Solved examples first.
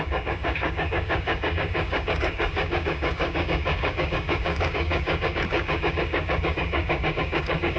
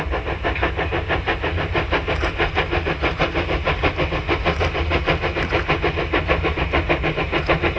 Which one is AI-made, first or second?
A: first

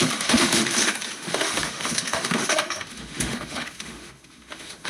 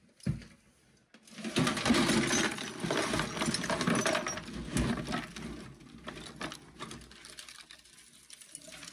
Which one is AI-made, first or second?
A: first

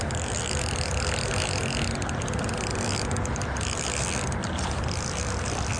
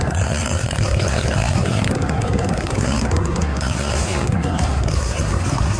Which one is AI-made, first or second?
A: second